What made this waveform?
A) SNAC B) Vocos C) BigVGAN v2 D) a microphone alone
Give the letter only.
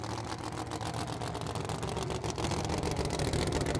D